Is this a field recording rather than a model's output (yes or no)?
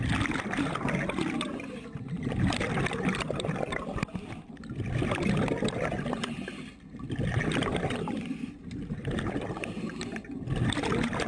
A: yes